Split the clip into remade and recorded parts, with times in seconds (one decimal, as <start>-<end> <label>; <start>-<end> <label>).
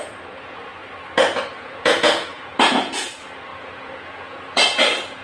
0.0-0.7 remade; 0.7-1.4 recorded; 1.4-5.2 remade